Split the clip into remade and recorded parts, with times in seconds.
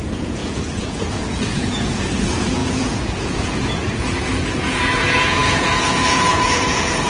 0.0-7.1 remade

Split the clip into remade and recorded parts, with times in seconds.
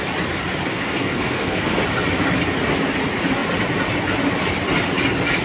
0.0-0.7 recorded; 0.7-1.8 remade; 1.8-5.4 recorded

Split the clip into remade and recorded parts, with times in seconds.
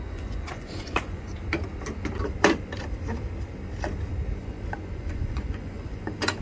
0.0-1.3 remade; 1.3-4.4 recorded; 4.4-6.4 remade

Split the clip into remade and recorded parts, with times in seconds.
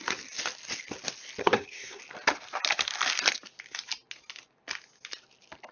0.0-1.4 recorded; 1.4-2.0 remade; 2.0-5.7 recorded